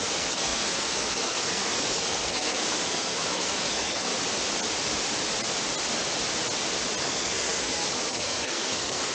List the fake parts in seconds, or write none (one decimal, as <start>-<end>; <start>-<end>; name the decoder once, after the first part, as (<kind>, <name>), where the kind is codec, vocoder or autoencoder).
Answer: 0.0-4.1 (codec, SNAC); 7.0-9.1